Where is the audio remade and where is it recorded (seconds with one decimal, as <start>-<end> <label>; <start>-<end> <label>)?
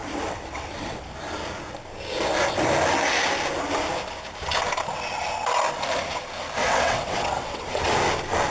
0.0-1.0 remade; 1.0-6.6 recorded; 6.6-7.9 remade; 7.9-8.5 recorded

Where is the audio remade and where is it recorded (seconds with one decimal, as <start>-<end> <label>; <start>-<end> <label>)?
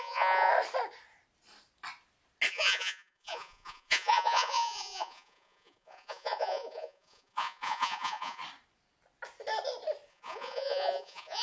0.0-0.5 remade; 0.5-2.5 recorded; 2.5-8.4 remade; 8.4-10.1 recorded; 10.1-11.4 remade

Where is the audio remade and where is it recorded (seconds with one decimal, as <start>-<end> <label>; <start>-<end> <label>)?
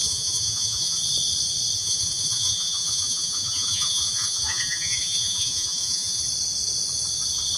0.0-1.0 remade; 1.0-1.8 recorded; 1.8-6.2 remade; 6.2-7.6 recorded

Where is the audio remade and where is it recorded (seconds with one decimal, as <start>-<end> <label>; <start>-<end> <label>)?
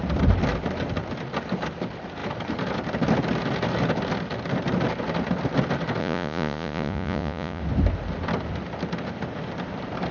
0.0-6.0 recorded; 6.0-7.6 remade; 7.6-10.1 recorded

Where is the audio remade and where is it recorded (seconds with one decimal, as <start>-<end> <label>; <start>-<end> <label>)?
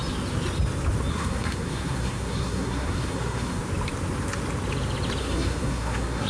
0.0-1.1 recorded; 1.1-3.6 remade; 3.6-5.2 recorded; 5.2-6.3 remade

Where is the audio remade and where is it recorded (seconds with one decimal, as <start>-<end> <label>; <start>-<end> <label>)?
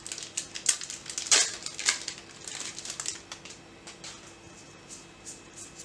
0.0-5.8 recorded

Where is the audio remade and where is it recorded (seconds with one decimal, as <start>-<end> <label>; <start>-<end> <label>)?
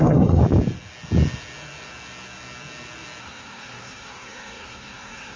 0.0-0.4 remade; 0.4-3.2 recorded; 3.2-5.4 remade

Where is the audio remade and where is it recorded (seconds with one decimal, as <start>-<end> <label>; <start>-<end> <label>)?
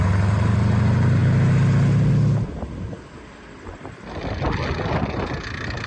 0.0-5.9 recorded